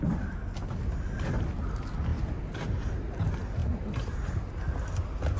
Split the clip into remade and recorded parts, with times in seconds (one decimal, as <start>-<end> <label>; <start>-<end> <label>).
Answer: 0.0-2.1 recorded; 2.1-2.9 remade; 2.9-3.6 recorded; 3.6-4.5 remade; 4.5-5.4 recorded